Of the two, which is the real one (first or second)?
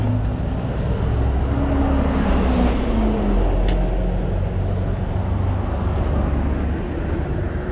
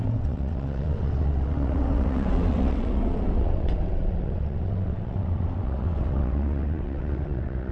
first